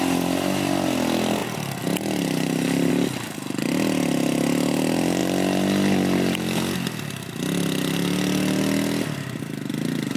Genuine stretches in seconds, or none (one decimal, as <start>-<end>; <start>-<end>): 0.0-10.2